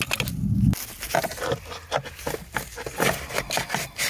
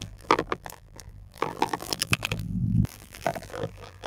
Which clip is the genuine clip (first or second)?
first